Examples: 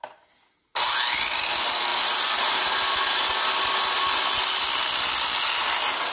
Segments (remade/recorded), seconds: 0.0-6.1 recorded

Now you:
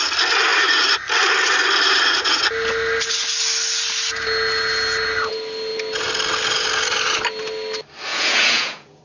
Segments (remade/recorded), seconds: 0.0-8.1 recorded; 8.1-9.0 remade

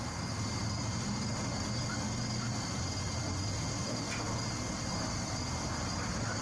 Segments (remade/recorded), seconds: 0.0-6.4 recorded

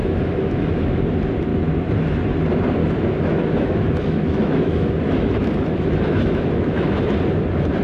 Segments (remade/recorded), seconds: 0.0-1.0 remade; 1.0-2.8 recorded; 2.8-7.0 remade; 7.0-7.8 recorded

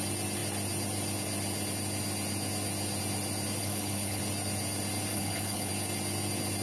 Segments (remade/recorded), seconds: 0.0-3.6 recorded; 3.6-4.2 remade; 4.2-5.1 recorded; 5.1-5.7 remade; 5.7-6.6 recorded